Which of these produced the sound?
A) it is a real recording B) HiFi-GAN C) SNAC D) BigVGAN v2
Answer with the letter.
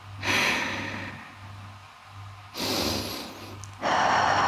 A